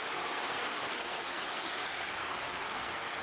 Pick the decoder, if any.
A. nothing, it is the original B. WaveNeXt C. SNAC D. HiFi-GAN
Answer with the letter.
C